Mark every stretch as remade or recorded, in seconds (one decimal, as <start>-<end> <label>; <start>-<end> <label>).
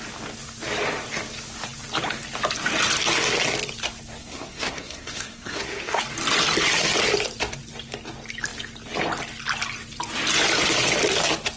0.0-4.2 recorded; 4.2-6.0 remade; 6.0-11.6 recorded